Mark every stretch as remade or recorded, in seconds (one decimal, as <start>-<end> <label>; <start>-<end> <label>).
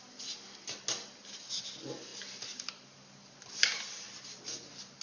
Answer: 0.0-5.0 recorded